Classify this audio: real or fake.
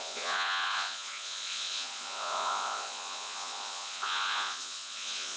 fake